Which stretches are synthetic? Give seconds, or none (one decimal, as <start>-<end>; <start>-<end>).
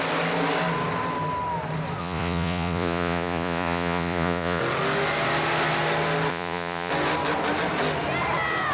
2.0-4.6; 6.3-6.9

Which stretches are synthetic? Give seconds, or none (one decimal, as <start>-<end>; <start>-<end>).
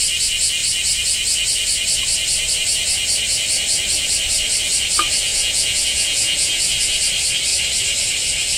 5.3-6.8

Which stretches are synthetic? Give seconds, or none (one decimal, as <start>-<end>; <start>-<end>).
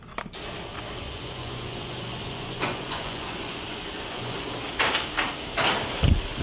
0.7-4.5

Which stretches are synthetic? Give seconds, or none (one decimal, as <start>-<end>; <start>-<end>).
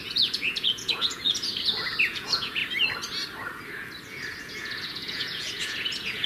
0.0-1.5; 2.1-2.6; 4.4-6.3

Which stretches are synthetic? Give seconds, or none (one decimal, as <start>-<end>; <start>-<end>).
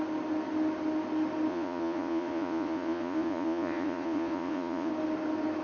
1.5-4.9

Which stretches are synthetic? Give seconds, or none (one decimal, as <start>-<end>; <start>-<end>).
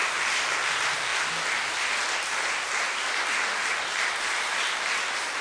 none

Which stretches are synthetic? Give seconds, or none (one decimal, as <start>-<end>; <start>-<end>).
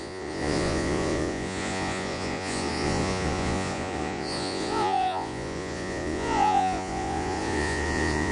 0.0-8.3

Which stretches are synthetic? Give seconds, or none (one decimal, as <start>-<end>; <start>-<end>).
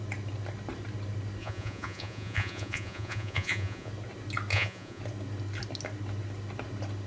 1.4-3.9; 4.5-5.0